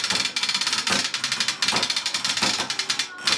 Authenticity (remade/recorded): recorded